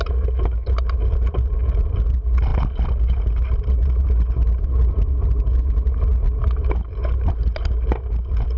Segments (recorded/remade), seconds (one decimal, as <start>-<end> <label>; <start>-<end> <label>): 0.0-8.6 recorded